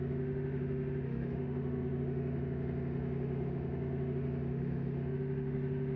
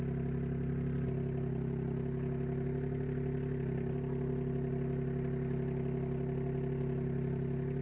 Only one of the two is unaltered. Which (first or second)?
second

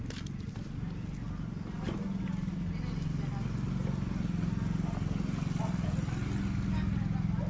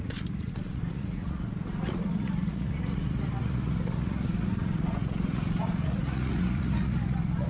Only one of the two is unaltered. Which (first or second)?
first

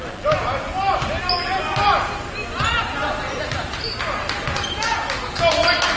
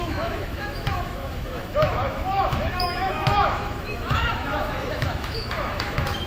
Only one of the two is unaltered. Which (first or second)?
first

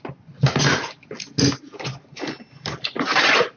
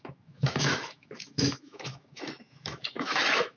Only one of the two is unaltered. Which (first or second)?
first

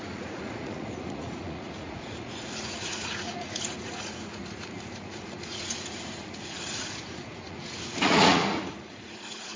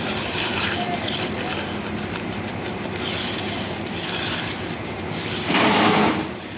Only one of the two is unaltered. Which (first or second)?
second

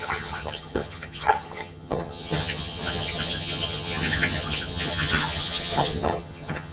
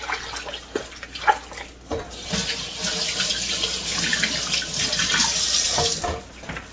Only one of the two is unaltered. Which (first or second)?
second